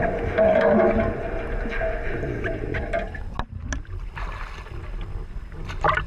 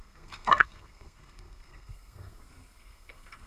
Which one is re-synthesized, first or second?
second